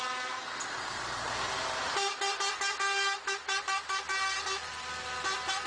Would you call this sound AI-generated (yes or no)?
no